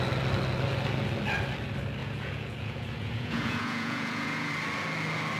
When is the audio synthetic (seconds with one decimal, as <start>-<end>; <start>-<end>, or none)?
2.0-4.5